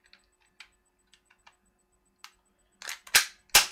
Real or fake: real